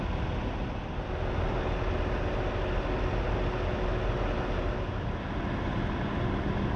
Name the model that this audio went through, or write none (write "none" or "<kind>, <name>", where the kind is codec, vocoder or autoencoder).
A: none